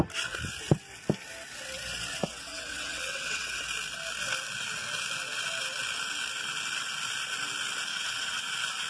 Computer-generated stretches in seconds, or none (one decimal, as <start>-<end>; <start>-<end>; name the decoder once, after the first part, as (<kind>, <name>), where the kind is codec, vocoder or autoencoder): 2.1-3.6 (vocoder, WaveNeXt); 7.9-8.5